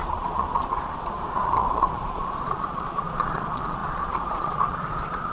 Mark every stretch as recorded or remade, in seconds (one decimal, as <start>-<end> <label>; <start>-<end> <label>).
0.0-5.3 remade